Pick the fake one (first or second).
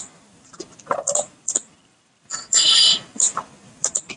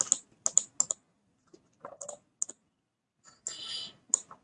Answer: first